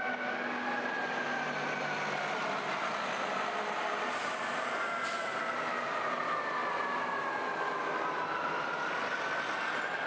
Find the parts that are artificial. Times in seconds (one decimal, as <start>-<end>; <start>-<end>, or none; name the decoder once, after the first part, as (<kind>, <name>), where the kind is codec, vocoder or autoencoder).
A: none